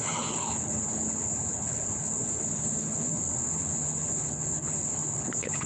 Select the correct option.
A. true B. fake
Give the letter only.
B